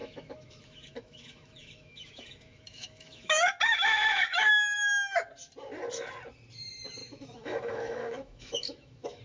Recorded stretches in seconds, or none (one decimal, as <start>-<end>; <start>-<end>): 4.5-7.0